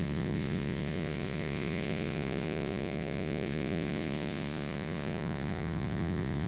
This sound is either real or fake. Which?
fake